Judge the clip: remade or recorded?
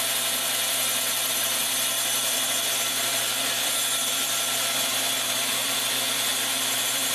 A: remade